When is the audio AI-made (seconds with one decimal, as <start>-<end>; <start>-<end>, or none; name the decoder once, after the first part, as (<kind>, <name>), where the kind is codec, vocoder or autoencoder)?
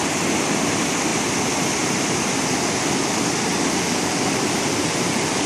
none